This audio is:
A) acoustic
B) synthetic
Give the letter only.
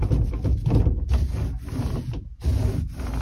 A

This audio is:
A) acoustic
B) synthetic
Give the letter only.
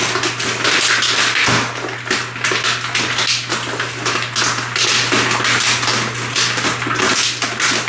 A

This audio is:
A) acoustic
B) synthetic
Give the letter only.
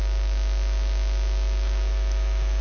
A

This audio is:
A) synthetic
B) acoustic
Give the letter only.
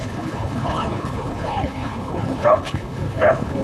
A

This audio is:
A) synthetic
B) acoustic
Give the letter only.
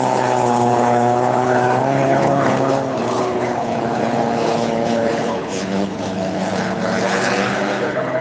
A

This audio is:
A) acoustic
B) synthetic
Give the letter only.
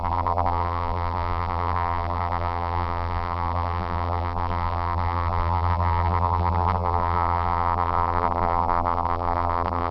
B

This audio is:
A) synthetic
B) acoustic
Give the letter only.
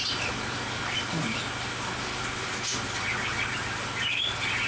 B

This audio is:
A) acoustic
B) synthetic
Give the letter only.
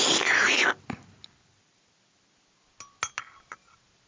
A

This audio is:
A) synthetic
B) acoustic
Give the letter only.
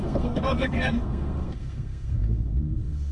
A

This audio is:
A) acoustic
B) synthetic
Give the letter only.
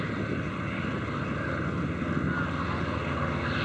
A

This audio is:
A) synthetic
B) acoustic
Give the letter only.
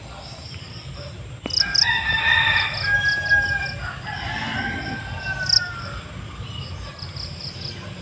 B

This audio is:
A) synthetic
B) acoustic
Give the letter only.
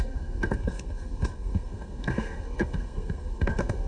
A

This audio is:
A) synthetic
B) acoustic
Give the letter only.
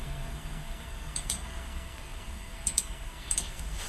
A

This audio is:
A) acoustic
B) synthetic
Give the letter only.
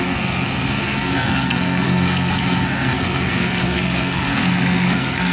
B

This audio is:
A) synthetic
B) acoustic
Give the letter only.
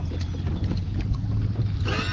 B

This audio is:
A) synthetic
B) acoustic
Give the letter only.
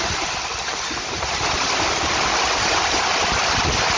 B